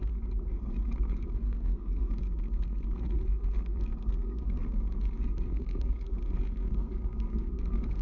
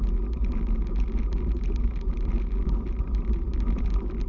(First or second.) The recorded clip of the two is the second